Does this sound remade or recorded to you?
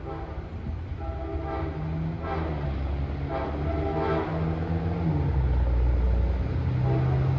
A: recorded